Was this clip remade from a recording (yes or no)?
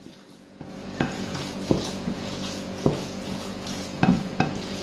yes